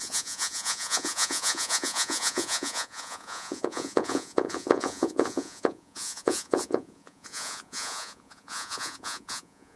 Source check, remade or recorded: remade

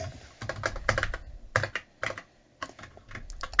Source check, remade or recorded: recorded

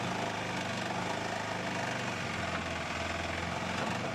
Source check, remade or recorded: recorded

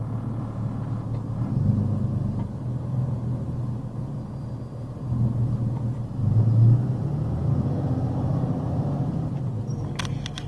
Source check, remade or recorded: recorded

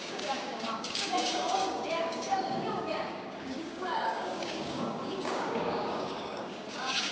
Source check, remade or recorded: remade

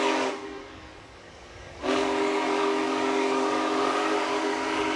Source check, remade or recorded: remade